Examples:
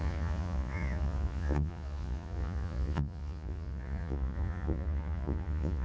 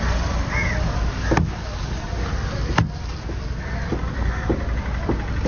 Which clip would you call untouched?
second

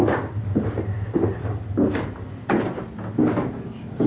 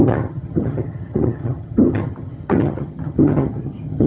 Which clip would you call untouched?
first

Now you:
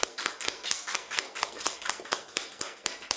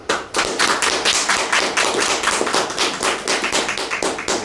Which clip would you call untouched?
second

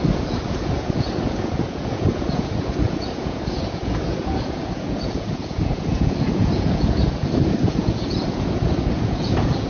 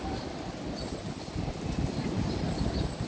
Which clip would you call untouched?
second